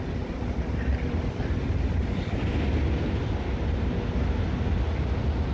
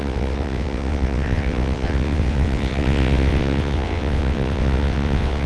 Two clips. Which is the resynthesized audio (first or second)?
second